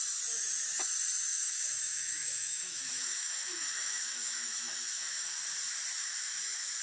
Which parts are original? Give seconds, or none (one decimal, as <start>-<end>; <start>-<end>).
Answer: 0.0-1.3; 5.4-6.0